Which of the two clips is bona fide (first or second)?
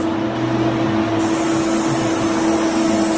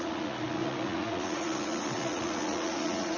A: first